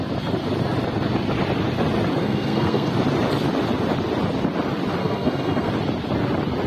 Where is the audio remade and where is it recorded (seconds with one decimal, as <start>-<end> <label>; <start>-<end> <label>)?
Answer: 0.0-2.2 recorded; 2.2-2.9 remade; 2.9-5.0 recorded; 5.0-5.7 remade; 5.7-6.7 recorded